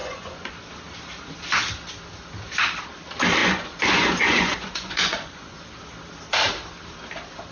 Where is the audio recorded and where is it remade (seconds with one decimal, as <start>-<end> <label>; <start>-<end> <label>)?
0.0-0.5 remade; 0.5-3.4 recorded; 3.4-5.6 remade; 5.6-7.5 recorded